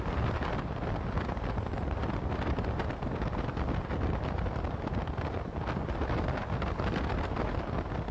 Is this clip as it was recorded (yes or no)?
yes